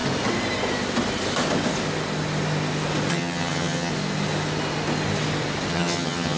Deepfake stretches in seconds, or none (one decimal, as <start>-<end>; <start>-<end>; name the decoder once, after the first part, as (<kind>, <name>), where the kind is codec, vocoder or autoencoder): 3.1-3.9 (vocoder, HiFi-GAN); 5.7-6.4